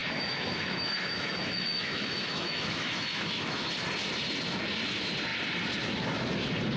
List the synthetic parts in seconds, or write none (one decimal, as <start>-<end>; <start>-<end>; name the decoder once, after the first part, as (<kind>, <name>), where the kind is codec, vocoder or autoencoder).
0.0-3.7 (autoencoder, DAC-VAE)

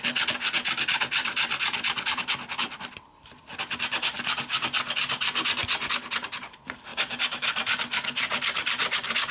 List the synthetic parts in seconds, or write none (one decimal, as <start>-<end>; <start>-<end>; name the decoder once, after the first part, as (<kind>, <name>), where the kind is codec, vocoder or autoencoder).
1.2-3.6 (vocoder, BigVGAN v2); 6.9-9.3

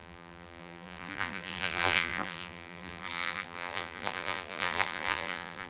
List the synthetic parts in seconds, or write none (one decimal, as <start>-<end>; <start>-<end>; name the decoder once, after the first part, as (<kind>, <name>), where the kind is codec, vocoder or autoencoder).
0.0-5.7 (vocoder, BigVGAN v2)

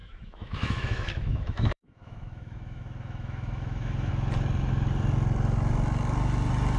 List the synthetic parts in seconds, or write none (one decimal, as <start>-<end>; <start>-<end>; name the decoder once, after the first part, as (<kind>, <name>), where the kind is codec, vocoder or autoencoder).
0.0-4.1 (autoencoder, DAC-VAE)